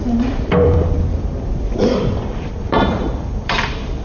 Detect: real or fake fake